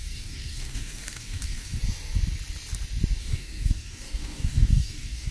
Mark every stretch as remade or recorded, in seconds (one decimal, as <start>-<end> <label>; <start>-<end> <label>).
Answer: 0.0-1.8 remade; 1.8-3.2 recorded; 3.2-5.3 remade